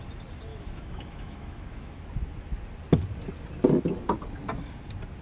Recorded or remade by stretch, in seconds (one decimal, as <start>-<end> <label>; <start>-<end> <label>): 0.0-0.5 recorded; 0.5-2.0 remade; 2.0-5.2 recorded